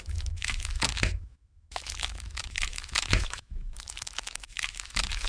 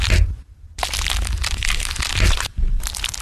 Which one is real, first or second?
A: second